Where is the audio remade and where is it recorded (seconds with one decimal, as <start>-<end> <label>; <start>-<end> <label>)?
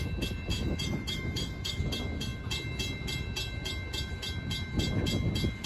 0.0-0.5 recorded; 0.5-1.8 remade; 1.8-5.7 recorded